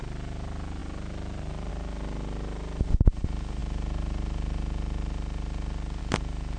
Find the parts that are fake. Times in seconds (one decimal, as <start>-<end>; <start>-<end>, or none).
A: none